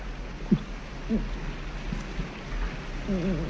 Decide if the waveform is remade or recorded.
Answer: recorded